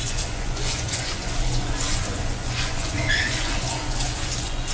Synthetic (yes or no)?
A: yes